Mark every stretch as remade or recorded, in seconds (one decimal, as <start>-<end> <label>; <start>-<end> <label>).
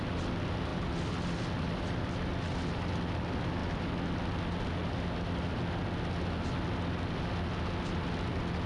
0.0-8.7 recorded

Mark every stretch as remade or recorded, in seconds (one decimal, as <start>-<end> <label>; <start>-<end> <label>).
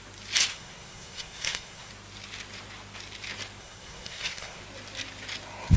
0.0-0.5 recorded; 0.5-1.9 remade; 1.9-3.6 recorded; 3.6-4.6 remade; 4.6-5.8 recorded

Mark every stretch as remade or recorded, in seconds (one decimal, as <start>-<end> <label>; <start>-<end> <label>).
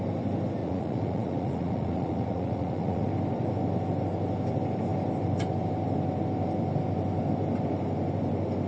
0.0-0.6 recorded; 0.6-3.1 remade; 3.1-8.7 recorded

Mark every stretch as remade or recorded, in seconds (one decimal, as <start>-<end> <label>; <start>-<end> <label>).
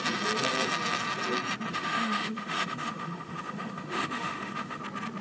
0.0-1.7 recorded; 1.7-4.8 remade; 4.8-5.2 recorded